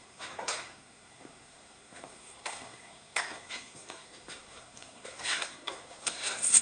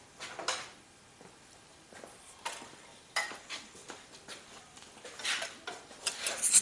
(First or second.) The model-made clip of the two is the first